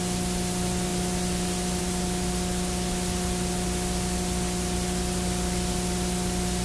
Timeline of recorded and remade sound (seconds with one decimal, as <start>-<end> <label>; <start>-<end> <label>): 0.0-6.6 recorded